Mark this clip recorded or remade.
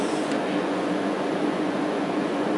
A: remade